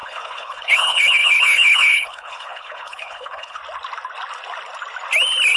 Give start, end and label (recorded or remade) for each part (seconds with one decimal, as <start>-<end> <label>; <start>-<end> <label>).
0.0-3.6 remade; 3.6-5.6 recorded